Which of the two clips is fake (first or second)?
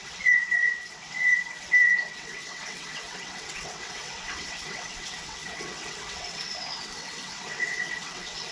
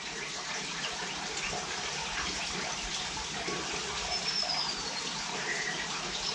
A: first